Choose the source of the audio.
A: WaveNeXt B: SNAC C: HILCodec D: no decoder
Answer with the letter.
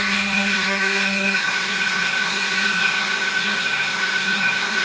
B